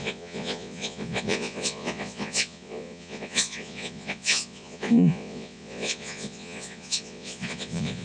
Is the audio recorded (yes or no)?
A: no